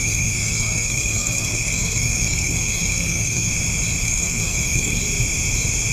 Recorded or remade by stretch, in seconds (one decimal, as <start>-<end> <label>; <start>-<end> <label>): 0.0-3.5 remade; 3.5-4.0 recorded; 4.0-5.0 remade; 5.0-5.9 recorded